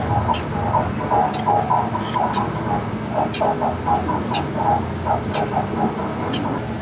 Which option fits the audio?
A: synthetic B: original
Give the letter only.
B